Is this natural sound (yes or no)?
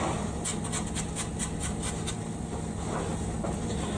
yes